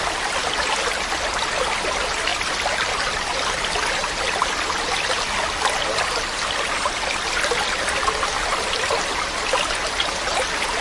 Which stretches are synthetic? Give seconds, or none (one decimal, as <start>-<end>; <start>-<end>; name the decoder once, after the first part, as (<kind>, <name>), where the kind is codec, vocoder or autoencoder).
none